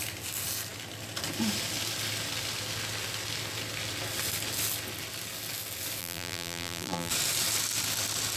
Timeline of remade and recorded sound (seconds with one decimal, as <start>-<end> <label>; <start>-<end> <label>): 0.0-6.0 recorded; 6.0-7.1 remade; 7.1-8.4 recorded